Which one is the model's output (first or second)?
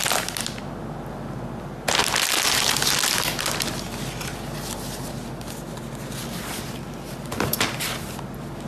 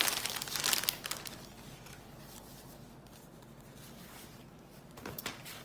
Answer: second